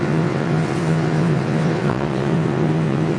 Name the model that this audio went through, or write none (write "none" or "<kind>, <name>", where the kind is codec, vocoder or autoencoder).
vocoder, WaveNeXt